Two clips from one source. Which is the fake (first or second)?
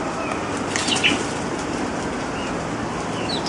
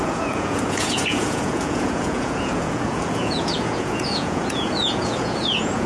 second